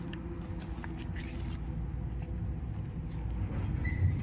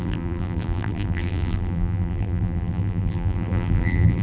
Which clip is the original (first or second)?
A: first